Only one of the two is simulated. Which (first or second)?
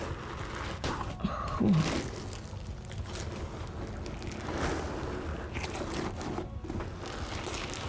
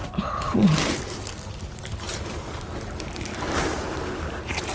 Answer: second